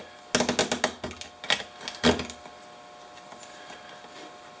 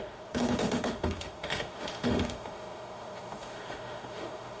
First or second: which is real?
first